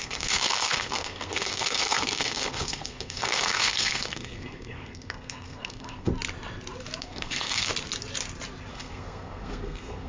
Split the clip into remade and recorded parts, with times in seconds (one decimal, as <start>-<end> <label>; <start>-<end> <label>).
0.0-6.1 remade; 6.1-7.0 recorded; 7.0-7.7 remade; 7.7-8.7 recorded; 8.7-10.1 remade